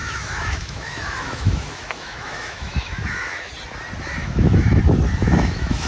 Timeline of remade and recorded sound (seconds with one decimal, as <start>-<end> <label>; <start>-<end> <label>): 0.0-3.5 remade; 3.5-4.2 recorded; 4.2-4.8 remade; 4.8-5.2 recorded; 5.2-5.9 remade